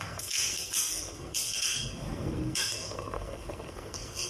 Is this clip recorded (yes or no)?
no